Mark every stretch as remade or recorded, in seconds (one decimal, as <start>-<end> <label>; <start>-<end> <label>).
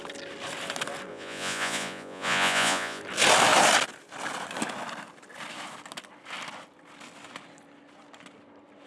0.0-1.1 recorded; 1.1-3.0 remade; 3.0-8.9 recorded